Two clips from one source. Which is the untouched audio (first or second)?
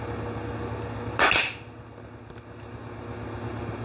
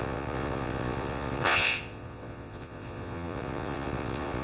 first